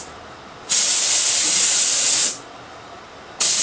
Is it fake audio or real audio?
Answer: real